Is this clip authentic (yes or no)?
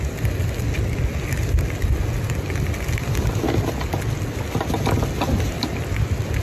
yes